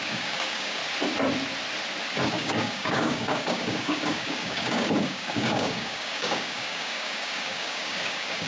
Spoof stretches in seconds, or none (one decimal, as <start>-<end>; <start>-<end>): 0.0-0.8; 2.3-8.5

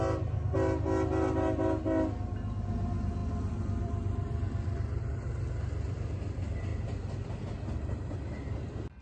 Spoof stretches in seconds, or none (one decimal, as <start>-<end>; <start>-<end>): 3.2-5.0

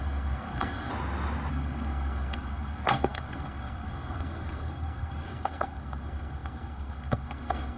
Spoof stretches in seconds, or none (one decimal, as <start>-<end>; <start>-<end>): 0.0-0.9; 1.5-7.8

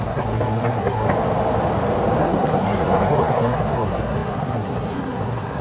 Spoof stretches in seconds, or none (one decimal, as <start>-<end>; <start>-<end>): 0.0-1.1; 2.2-5.6

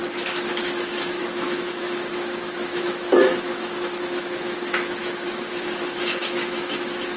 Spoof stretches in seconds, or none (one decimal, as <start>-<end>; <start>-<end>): 0.5-7.2